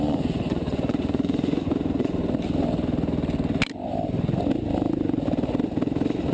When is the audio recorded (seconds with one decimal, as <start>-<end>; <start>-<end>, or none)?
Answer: 2.2-6.3